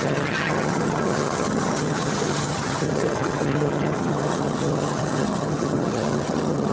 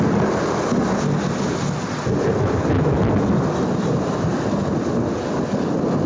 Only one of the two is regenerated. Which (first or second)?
first